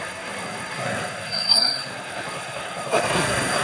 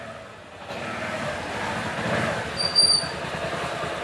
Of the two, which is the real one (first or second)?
second